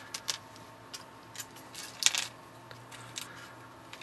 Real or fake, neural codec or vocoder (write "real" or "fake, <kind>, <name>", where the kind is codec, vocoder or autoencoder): real